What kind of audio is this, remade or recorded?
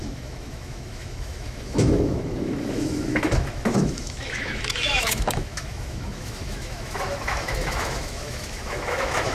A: remade